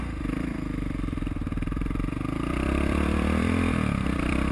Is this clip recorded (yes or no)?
no